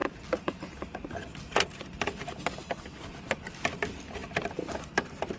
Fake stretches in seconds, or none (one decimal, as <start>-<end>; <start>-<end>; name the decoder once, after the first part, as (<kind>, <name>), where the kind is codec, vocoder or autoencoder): none